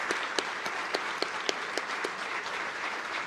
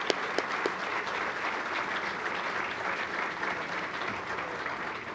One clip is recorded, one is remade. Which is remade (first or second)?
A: first